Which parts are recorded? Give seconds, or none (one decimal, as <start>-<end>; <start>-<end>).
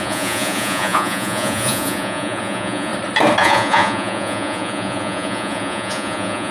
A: 2.9-3.4